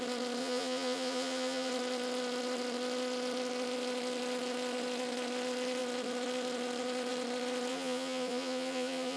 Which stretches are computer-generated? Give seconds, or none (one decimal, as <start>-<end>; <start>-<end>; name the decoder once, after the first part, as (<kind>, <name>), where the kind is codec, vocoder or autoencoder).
0.4-1.7 (vocoder, Vocos); 7.7-9.2